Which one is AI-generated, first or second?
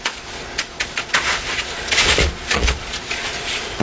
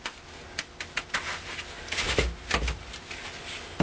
first